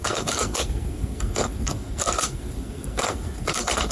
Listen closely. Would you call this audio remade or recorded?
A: remade